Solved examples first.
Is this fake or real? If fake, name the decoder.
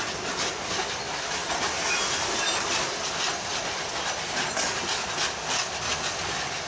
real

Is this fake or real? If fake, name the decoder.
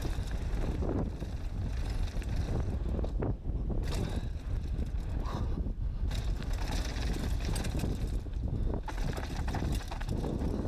real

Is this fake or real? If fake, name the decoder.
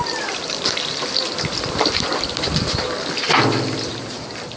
fake, vocoder, BigVGAN v2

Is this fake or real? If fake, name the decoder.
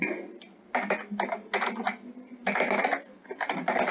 real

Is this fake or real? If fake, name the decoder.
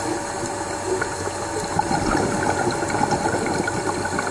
real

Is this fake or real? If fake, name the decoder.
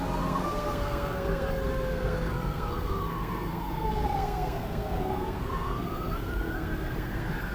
fake, codec, SNAC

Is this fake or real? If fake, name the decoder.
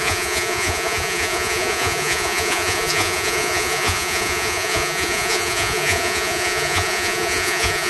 fake, vocoder, Vocos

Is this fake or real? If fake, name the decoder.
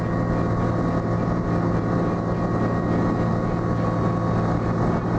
real